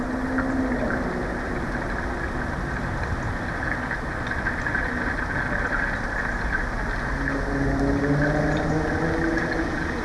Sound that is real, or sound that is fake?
real